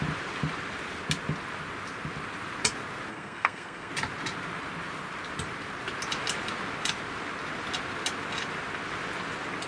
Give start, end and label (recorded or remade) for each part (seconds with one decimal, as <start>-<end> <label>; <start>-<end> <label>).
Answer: 0.0-3.1 recorded; 3.1-3.9 remade; 3.9-9.7 recorded